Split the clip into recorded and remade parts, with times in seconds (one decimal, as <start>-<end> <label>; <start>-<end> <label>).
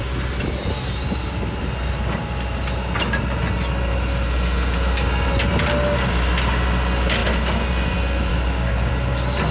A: 0.0-8.3 recorded; 8.3-8.9 remade; 8.9-9.5 recorded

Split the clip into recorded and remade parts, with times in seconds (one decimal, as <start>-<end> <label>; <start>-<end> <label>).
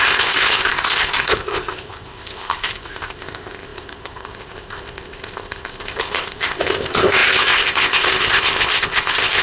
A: 0.0-9.4 remade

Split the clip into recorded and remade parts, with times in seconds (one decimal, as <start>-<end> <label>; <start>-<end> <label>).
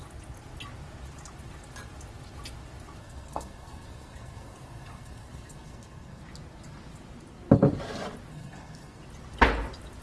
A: 0.0-3.0 recorded; 3.0-6.2 remade; 6.2-8.3 recorded; 8.3-9.0 remade; 9.0-10.0 recorded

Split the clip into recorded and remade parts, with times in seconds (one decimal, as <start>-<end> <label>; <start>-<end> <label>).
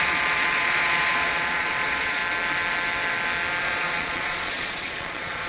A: 0.0-2.2 remade; 2.2-3.6 recorded; 3.6-5.5 remade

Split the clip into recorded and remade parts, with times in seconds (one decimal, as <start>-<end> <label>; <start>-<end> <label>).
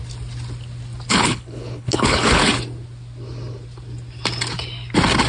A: 0.0-1.1 recorded; 1.1-2.5 remade; 2.5-5.3 recorded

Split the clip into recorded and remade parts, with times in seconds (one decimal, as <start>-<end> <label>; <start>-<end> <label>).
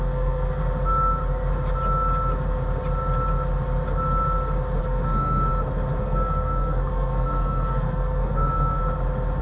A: 0.0-0.6 remade; 0.6-4.8 recorded; 4.8-5.5 remade; 5.5-6.0 recorded; 6.0-8.8 remade; 8.8-9.4 recorded